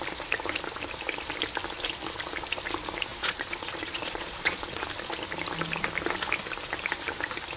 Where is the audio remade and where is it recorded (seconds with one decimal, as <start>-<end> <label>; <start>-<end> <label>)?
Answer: 0.0-3.1 recorded; 3.1-4.9 remade; 4.9-7.6 recorded